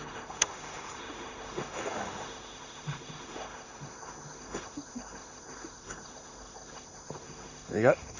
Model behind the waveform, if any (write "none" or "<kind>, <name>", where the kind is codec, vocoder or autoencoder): autoencoder, DAC-VAE